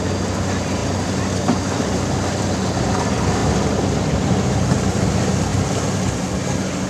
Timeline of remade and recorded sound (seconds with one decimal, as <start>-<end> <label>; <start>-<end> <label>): 0.0-3.4 recorded; 3.4-4.7 remade; 4.7-5.5 recorded; 5.5-6.3 remade; 6.3-6.9 recorded